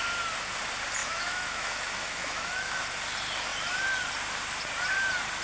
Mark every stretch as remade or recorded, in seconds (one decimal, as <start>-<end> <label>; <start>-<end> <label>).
0.0-1.0 recorded; 1.0-2.8 remade; 2.8-5.4 recorded